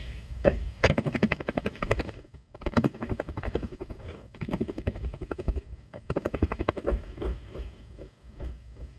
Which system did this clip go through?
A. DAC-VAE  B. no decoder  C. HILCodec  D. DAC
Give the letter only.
D